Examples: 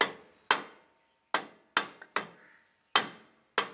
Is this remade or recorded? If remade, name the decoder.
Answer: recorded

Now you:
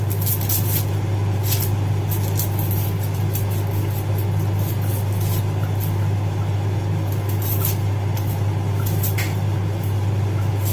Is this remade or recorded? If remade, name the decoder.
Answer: recorded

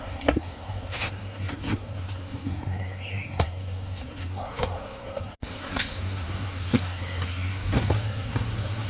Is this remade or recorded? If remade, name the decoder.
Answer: remade, codec, SNAC